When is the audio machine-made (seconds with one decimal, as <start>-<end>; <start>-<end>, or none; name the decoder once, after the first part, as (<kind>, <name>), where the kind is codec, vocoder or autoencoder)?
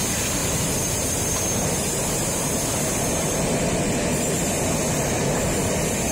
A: 0.4-1.4 (vocoder, BigVGAN v2)